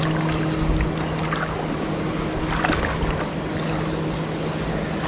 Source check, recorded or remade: recorded